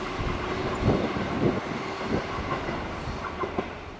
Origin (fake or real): real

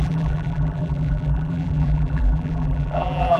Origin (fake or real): fake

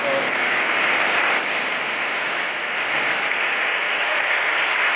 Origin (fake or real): fake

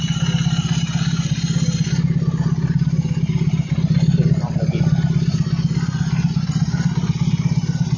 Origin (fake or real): real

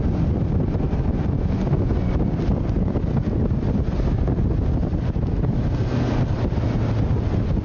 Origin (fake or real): real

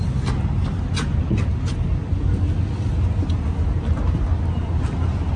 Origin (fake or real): real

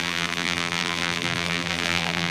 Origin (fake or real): fake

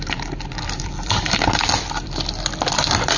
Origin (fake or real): fake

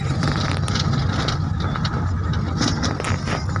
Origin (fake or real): real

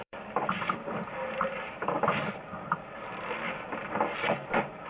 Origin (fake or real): fake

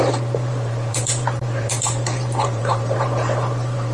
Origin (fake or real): fake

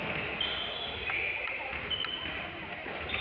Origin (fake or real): real